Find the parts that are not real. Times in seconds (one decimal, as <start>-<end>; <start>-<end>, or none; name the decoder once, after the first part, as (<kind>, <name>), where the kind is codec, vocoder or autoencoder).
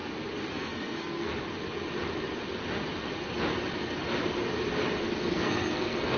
0.5-1.3 (codec, SNAC); 5.0-6.2